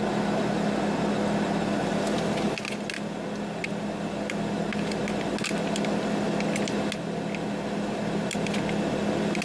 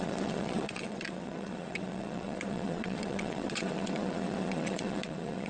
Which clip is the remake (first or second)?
second